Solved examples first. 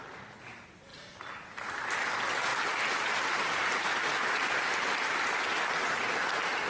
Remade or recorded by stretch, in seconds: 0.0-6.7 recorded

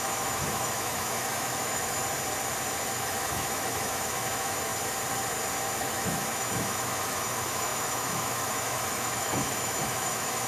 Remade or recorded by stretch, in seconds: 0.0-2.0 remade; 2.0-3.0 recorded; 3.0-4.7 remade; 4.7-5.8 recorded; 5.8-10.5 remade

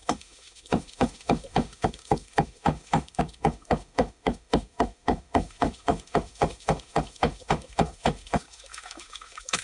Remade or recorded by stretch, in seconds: 0.0-9.6 remade

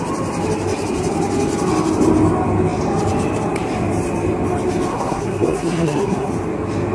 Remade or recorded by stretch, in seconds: 0.0-4.9 recorded; 4.9-6.3 remade; 6.3-6.9 recorded